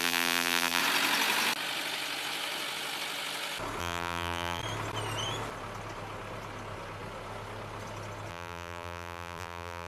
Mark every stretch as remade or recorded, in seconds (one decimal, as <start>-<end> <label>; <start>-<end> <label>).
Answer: 0.0-0.8 remade; 0.8-3.8 recorded; 3.8-4.6 remade; 4.6-8.3 recorded; 8.3-9.9 remade